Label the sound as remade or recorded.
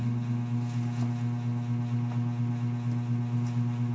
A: recorded